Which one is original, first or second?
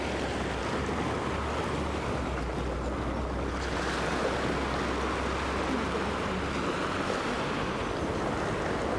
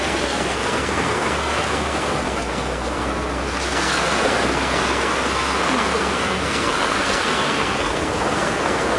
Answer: first